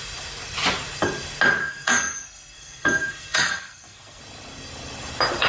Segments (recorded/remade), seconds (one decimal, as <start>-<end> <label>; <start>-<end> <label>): 0.0-1.6 recorded; 1.6-4.2 remade; 4.2-5.5 recorded